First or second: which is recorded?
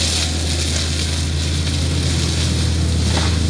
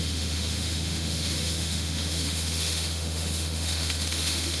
first